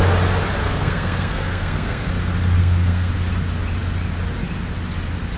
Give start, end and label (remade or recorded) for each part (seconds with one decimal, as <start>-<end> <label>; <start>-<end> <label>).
0.0-0.6 recorded; 0.6-2.1 remade; 2.1-2.6 recorded; 2.6-3.1 remade; 3.1-5.4 recorded